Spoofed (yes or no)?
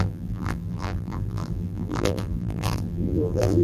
yes